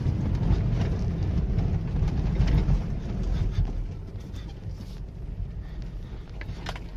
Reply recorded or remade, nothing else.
recorded